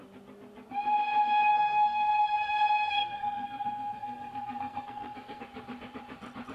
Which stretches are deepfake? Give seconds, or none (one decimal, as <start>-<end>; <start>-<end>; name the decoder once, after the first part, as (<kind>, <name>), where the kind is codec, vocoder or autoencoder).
1.5-5.4 (codec, SNAC)